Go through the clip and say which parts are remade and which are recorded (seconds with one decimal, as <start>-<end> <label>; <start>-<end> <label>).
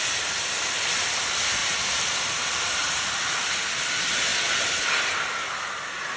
0.0-1.6 recorded; 1.6-3.6 remade; 3.6-6.2 recorded